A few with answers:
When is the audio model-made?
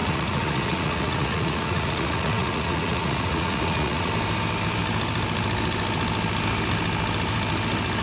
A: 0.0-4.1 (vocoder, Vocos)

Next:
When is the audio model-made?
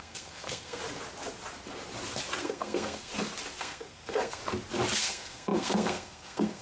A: 0.0-0.8 (codec, SNAC); 2.4-3.1; 3.6-4.4; 5.0-6.6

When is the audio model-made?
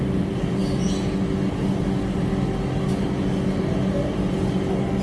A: none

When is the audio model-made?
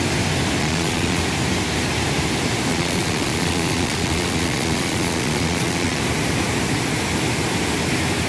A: 0.6-1.2 (vocoder, Vocos); 2.7-6.0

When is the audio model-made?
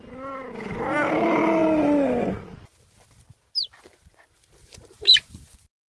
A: 4.6-5.3 (vocoder, BigVGAN v2)